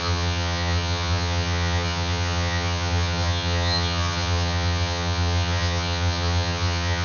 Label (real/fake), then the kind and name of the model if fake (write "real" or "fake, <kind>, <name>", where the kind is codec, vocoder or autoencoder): fake, vocoder, HiFi-GAN